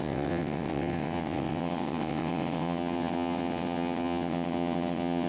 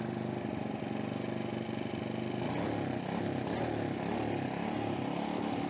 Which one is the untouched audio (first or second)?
second